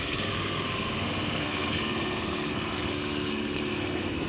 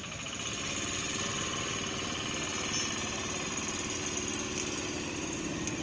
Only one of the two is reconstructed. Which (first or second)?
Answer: first